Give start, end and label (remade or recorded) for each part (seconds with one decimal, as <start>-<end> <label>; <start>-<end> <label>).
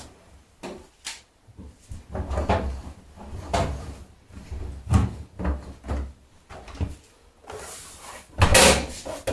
0.0-9.3 recorded